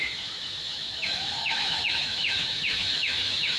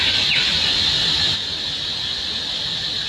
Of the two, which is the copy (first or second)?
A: first